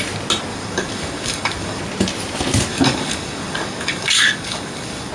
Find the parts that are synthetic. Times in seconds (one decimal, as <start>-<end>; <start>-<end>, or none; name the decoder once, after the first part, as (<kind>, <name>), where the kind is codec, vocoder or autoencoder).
0.5-1.8 (codec, DAC); 2.7-5.1